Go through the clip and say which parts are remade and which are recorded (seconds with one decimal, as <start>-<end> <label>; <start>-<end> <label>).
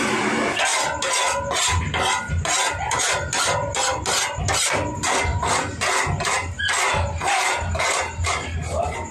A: 0.0-9.1 recorded